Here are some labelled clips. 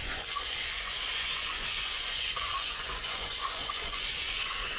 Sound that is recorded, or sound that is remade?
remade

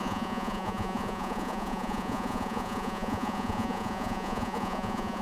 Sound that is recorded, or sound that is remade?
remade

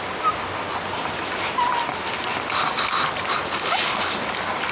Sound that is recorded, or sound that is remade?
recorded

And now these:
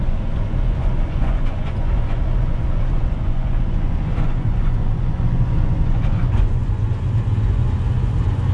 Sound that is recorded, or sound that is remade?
remade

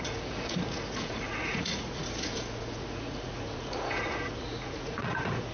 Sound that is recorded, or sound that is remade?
remade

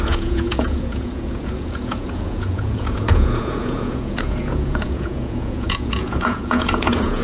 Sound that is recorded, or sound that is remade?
remade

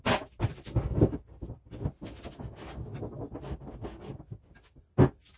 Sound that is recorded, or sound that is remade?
recorded